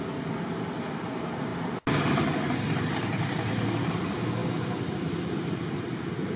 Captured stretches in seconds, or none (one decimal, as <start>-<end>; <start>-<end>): 0.0-6.4